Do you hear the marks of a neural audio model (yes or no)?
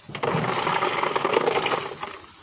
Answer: no